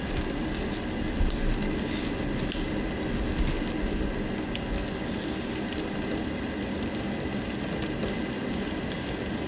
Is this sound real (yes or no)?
yes